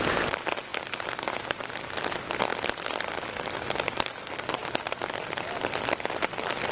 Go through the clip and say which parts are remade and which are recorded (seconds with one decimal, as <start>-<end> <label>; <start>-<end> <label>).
0.0-0.7 recorded; 0.7-1.3 remade; 1.3-2.5 recorded; 2.5-3.0 remade; 3.0-6.7 recorded